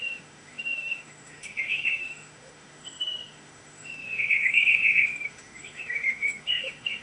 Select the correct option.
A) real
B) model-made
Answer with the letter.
B